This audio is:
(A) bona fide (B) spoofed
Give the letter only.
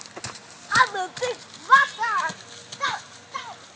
A